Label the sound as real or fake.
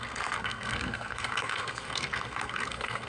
fake